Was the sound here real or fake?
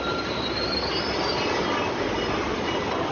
real